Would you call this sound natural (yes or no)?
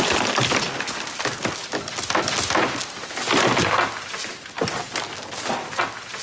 yes